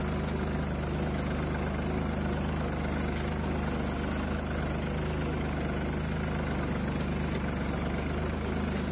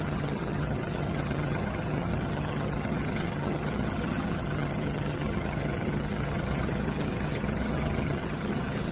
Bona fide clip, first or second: first